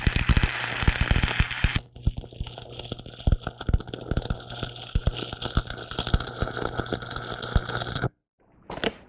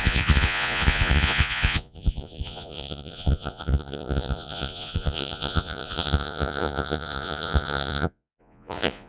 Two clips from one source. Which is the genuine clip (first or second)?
first